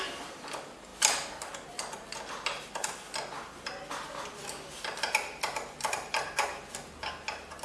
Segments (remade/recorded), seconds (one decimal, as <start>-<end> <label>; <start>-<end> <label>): 0.0-7.6 recorded